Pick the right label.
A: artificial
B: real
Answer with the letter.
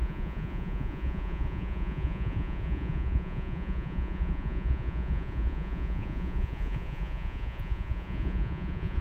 A